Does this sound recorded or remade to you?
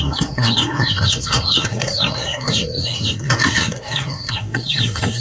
remade